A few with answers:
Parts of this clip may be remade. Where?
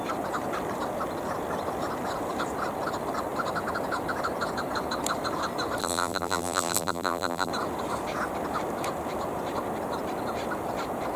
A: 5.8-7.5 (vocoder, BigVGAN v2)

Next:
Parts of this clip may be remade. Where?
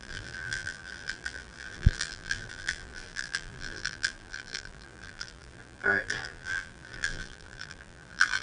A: 0.0-8.4 (vocoder, BigVGAN v2)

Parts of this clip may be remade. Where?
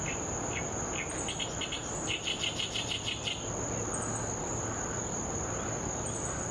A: none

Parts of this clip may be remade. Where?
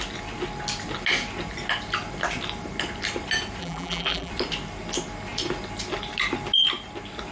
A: 3.6-4.3 (vocoder, BigVGAN v2)